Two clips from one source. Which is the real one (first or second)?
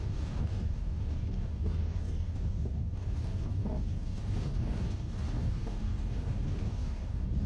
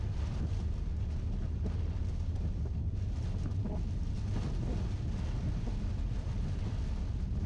second